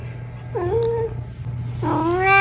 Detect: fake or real real